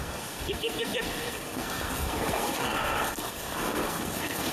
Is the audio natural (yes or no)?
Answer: no